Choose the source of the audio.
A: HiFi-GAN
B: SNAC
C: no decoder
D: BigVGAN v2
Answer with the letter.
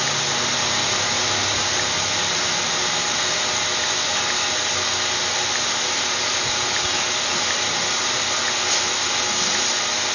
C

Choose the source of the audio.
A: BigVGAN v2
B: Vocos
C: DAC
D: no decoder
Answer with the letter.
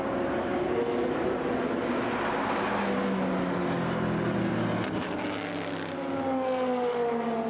D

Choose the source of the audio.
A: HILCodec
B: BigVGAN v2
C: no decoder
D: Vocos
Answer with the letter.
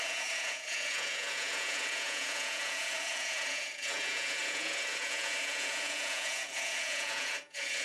D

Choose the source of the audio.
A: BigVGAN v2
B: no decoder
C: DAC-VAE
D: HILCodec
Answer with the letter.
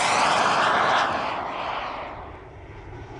B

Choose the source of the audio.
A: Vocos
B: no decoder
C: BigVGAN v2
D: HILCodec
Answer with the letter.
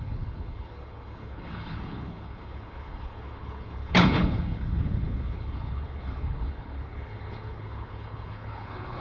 D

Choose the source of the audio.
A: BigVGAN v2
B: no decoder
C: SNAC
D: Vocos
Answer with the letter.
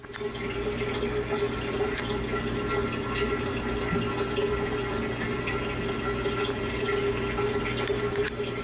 B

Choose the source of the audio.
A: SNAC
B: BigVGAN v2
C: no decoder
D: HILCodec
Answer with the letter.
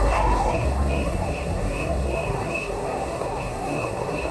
A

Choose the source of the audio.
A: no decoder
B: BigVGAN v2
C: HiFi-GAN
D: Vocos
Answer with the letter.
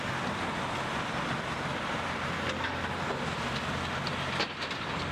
A